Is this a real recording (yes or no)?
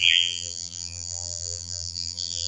no